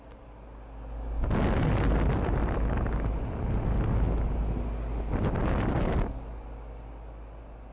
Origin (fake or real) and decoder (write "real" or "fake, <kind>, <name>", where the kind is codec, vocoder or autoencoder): real